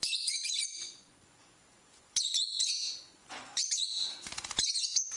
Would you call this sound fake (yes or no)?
yes